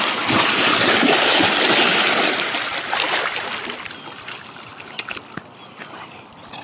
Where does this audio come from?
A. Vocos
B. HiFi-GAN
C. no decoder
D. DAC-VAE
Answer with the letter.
C